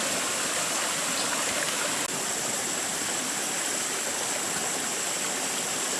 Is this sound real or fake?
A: real